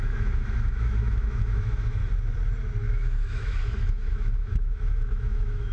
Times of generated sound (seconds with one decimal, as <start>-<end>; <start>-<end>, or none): 0.0-2.0; 2.9-5.7